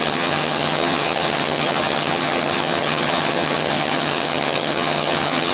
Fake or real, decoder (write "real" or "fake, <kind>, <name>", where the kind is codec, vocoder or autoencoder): fake, vocoder, HiFi-GAN